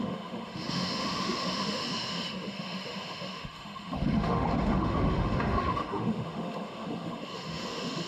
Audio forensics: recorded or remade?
remade